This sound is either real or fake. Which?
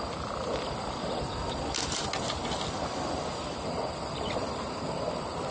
real